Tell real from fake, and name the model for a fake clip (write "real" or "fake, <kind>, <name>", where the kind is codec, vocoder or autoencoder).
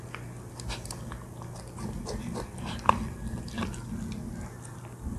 real